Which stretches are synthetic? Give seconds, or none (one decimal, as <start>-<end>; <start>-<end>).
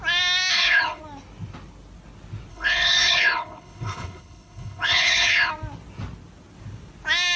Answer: 0.5-1.0; 2.5-5.5